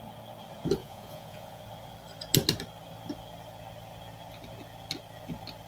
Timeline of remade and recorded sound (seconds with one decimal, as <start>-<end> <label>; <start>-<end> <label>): 0.0-0.8 recorded; 0.8-1.6 remade; 1.6-5.7 recorded